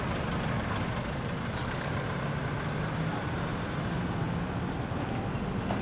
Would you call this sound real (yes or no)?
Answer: yes